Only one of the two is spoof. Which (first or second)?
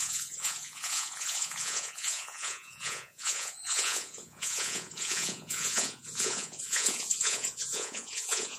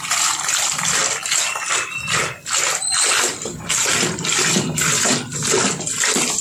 first